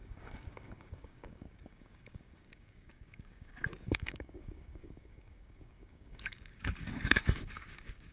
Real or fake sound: fake